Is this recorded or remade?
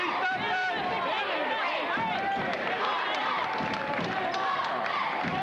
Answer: remade